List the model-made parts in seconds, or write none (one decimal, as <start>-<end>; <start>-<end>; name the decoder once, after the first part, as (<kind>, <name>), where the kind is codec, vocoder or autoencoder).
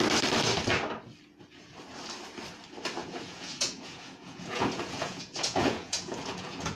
3.0-6.8 (vocoder, Vocos)